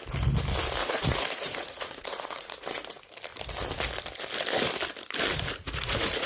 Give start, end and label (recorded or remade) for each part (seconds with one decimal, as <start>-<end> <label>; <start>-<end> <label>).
0.0-0.8 recorded; 0.8-2.8 remade; 2.8-5.3 recorded; 5.3-6.3 remade